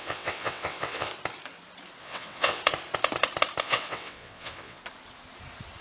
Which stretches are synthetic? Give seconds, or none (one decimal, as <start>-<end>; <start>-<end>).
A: 0.0-1.1; 2.0-2.6; 3.6-4.8